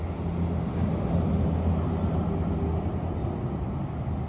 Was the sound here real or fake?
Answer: real